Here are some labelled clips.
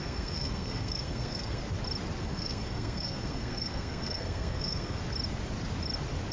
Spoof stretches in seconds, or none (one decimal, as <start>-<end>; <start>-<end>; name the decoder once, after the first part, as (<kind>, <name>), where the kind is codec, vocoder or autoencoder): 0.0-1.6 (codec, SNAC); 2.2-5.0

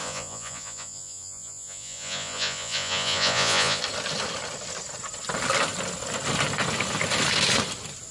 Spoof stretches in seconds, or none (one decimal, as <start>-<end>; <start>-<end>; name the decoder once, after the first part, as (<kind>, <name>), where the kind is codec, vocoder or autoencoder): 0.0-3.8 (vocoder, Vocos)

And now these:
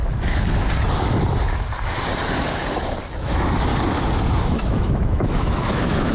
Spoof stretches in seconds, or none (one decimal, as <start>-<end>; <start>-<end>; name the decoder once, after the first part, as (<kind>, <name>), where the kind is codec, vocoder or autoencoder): 3.2-3.7 (autoencoder, DAC-VAE); 4.4-6.1